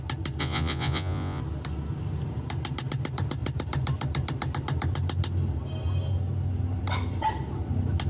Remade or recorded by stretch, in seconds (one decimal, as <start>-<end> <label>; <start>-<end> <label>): 0.0-0.4 recorded; 0.4-1.4 remade; 1.4-8.1 recorded